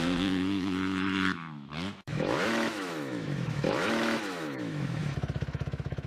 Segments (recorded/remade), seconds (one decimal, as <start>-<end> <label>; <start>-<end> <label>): 0.0-6.1 remade